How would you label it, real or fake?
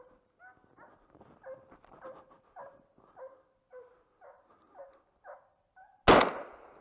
real